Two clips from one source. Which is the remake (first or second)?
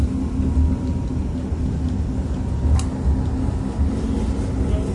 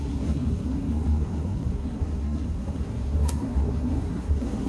second